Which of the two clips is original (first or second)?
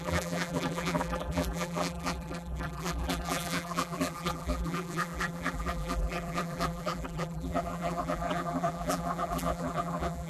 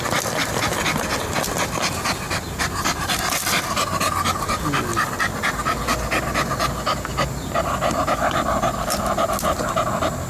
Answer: second